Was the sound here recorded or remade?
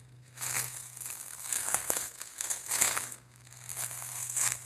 remade